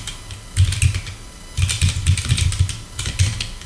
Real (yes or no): yes